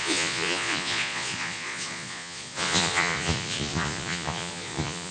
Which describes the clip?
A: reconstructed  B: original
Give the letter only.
A